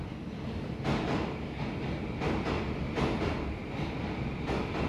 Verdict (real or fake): real